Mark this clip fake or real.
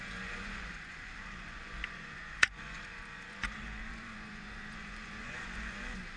fake